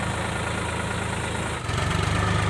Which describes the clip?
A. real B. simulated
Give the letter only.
A